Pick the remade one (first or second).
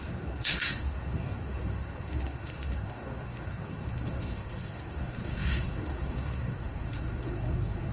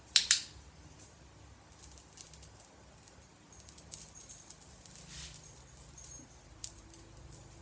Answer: first